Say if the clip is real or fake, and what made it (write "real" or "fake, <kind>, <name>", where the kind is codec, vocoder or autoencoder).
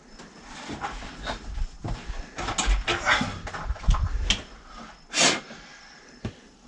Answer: real